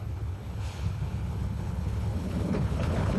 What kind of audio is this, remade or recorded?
remade